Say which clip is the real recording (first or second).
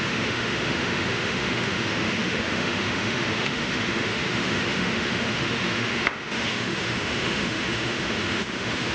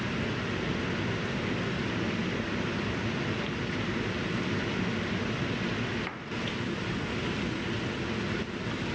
second